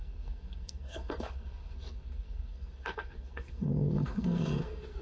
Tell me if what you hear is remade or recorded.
remade